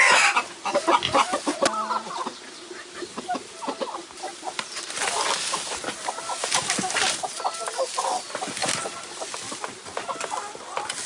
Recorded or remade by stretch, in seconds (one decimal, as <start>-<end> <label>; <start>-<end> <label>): 0.0-11.1 recorded